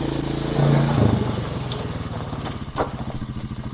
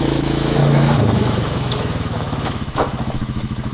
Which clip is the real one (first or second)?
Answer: first